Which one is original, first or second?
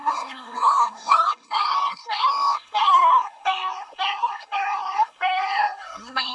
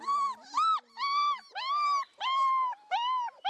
second